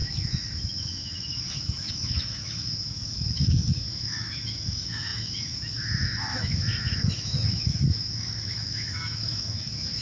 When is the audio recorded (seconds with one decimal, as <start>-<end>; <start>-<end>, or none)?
none